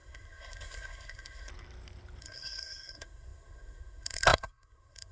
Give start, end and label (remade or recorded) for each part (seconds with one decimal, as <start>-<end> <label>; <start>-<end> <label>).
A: 0.0-1.5 remade; 1.5-2.2 recorded; 2.2-5.1 remade